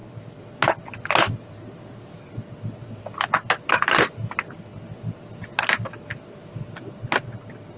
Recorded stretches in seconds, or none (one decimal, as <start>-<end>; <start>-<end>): 0.0-7.8